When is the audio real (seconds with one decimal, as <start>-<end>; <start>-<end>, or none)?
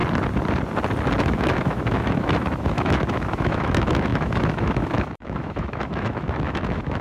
0.0-1.2